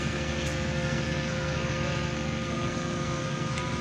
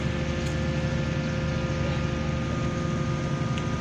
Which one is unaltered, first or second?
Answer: second